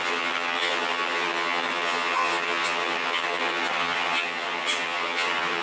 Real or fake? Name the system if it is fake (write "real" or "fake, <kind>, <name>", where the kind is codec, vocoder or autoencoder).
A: fake, vocoder, HiFi-GAN